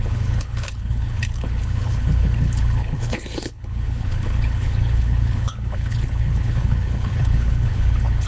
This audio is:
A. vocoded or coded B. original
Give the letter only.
A